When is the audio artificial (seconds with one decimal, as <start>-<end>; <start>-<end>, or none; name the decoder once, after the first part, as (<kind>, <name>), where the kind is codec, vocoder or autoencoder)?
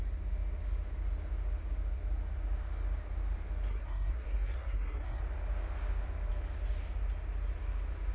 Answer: 3.7-5.2 (codec, SNAC)